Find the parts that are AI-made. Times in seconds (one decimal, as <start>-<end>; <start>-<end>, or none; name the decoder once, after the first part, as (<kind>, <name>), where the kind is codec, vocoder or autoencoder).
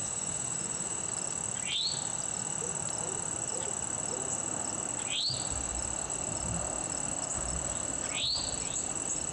0.0-1.0 (vocoder, Vocos)